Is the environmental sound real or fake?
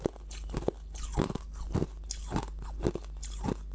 real